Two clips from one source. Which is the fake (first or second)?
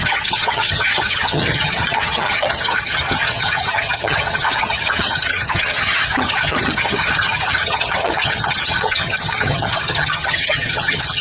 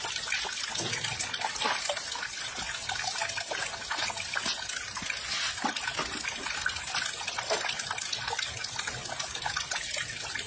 first